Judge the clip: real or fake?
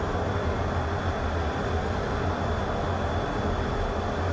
real